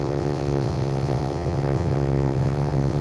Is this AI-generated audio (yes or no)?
yes